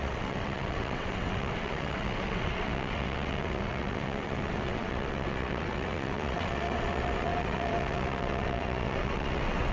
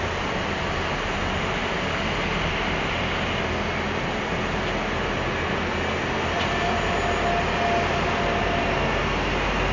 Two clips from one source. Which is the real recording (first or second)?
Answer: second